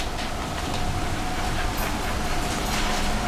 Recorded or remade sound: recorded